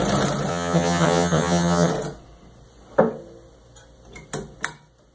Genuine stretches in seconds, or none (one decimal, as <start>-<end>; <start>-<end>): 0.0-0.5; 1.9-5.1